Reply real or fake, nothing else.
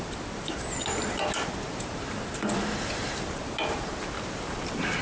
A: real